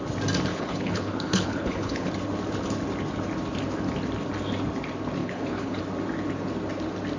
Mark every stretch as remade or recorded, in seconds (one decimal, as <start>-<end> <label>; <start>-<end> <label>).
0.0-0.5 recorded; 0.5-2.1 remade; 2.1-5.2 recorded; 5.2-5.8 remade; 5.8-7.2 recorded

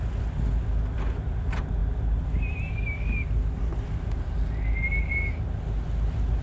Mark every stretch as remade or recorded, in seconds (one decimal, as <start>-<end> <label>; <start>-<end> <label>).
0.0-6.4 recorded

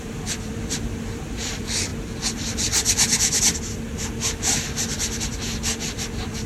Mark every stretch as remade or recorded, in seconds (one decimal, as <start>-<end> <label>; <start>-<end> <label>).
0.0-1.9 remade; 1.9-5.8 recorded; 5.8-6.5 remade

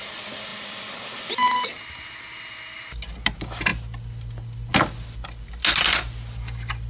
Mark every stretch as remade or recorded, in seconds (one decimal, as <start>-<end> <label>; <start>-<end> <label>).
0.0-6.9 recorded

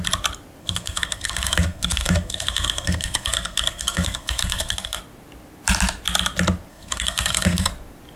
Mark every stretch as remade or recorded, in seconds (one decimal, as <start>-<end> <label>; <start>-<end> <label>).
0.0-0.6 recorded; 0.6-5.0 remade; 5.0-6.7 recorded; 6.7-7.7 remade; 7.7-8.2 recorded